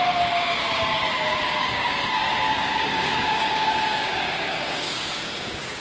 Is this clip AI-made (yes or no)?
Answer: yes